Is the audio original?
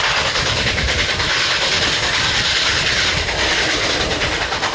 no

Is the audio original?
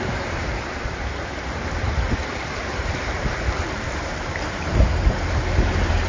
no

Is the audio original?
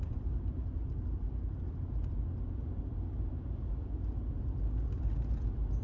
yes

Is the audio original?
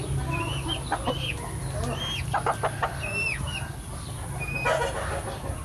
yes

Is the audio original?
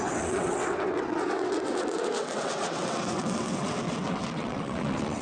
no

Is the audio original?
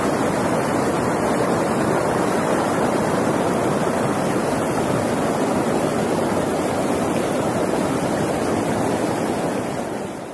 no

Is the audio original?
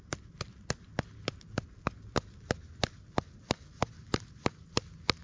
yes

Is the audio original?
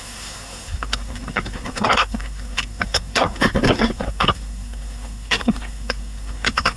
no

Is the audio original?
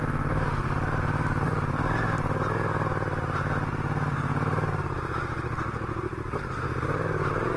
yes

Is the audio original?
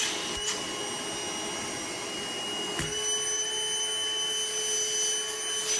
yes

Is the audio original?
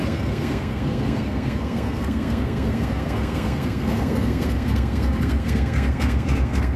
no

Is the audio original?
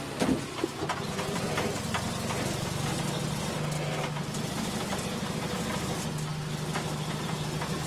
yes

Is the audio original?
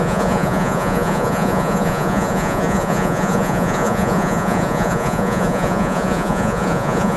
no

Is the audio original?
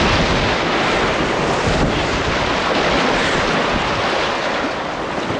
yes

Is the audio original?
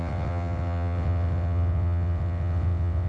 no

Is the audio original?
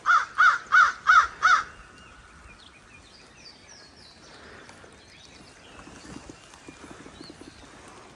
yes